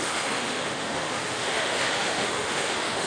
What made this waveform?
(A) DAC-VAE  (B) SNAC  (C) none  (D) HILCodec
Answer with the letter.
A